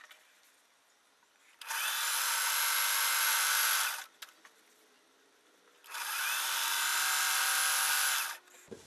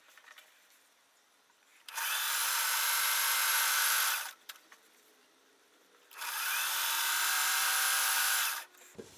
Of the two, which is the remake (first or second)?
second